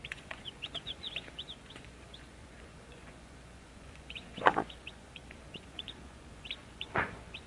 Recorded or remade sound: remade